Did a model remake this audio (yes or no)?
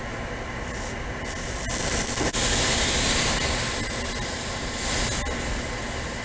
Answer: no